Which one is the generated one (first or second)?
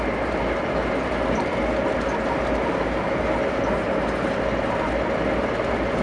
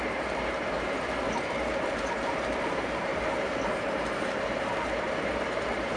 second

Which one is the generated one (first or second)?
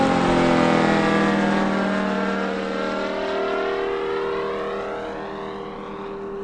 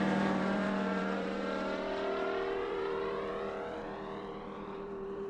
second